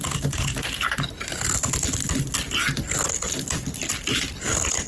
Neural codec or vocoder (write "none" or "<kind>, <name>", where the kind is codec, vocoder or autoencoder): none